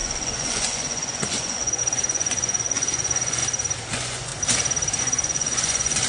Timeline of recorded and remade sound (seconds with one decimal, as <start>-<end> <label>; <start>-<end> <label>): 0.0-3.4 remade; 3.4-3.9 recorded; 3.9-4.3 remade; 4.3-5.0 recorded; 5.0-6.1 remade